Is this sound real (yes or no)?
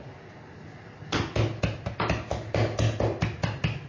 yes